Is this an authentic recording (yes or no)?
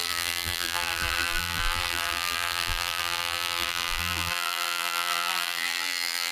no